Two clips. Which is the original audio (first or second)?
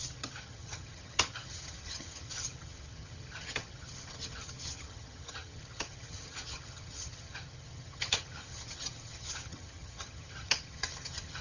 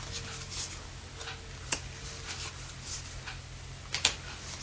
second